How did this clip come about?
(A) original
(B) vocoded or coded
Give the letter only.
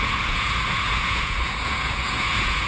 B